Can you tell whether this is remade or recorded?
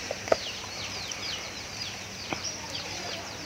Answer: remade